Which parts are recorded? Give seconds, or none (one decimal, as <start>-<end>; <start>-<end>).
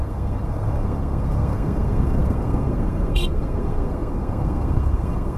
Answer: none